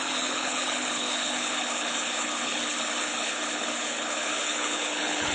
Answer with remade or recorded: remade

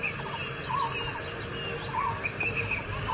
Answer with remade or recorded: recorded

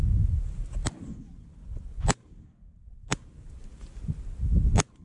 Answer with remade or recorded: recorded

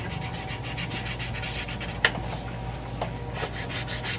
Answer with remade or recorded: recorded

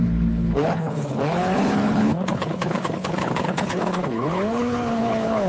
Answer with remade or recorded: remade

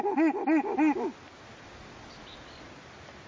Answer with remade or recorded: recorded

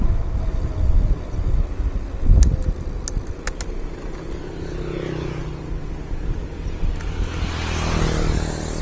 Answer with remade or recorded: recorded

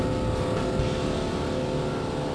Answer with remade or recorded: recorded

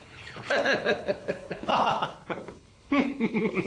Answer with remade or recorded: remade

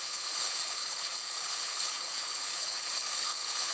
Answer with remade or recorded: remade